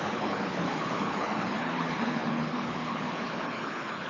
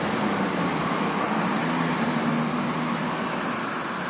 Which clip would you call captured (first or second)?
second